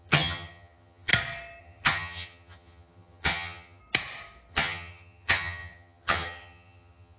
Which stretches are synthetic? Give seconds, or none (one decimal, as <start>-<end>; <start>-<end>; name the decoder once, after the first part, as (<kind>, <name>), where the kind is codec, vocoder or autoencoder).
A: 0.0-1.1 (vocoder, HiFi-GAN); 1.6-3.8; 4.5-7.2